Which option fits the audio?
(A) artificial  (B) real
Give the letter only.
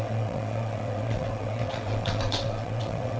A